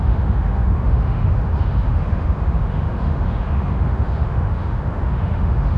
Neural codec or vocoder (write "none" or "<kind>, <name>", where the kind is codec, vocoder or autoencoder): autoencoder, DAC-VAE